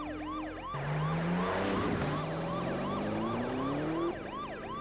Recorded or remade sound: recorded